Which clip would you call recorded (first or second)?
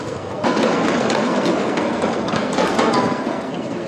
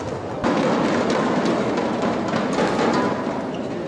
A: second